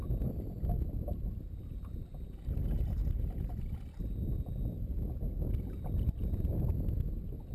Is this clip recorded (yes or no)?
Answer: yes